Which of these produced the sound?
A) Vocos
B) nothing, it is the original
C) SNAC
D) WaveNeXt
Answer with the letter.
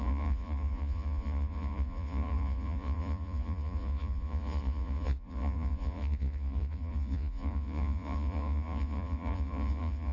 A